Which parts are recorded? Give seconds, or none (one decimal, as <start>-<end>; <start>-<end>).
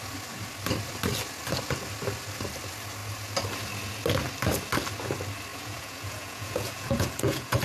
0.0-5.5